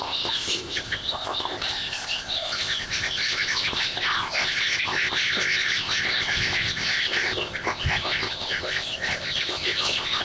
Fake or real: fake